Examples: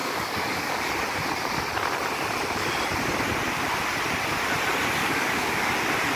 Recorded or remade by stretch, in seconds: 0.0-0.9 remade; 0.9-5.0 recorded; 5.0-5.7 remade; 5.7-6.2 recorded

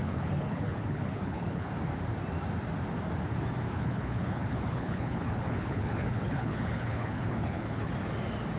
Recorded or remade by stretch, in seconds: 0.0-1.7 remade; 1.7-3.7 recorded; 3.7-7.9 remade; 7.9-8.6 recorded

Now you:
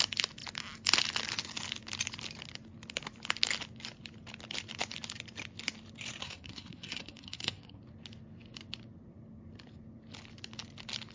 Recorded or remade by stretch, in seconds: 0.0-6.2 recorded; 6.2-7.8 remade; 7.8-11.1 recorded

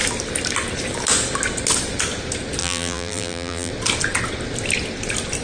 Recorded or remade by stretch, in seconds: 0.0-2.6 recorded; 2.6-3.7 remade; 3.7-5.4 recorded

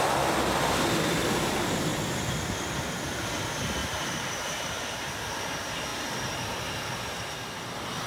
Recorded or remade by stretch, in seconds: 0.0-3.8 recorded; 3.8-5.1 remade; 5.1-8.1 recorded